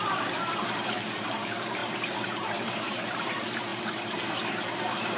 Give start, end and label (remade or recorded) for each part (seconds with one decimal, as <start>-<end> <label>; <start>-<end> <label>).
0.0-5.2 remade